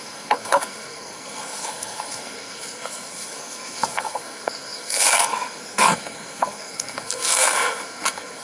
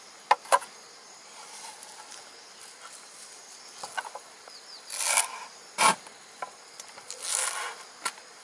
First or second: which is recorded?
second